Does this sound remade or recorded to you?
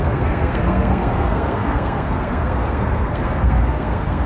remade